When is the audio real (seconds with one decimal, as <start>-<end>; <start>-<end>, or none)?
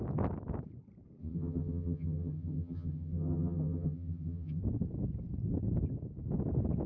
0.0-1.2; 4.6-6.9